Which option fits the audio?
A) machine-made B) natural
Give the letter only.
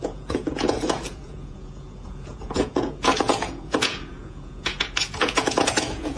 A